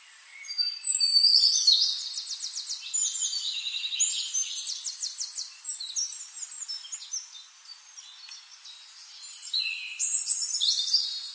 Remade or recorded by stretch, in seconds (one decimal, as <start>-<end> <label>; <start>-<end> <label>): 0.0-11.3 recorded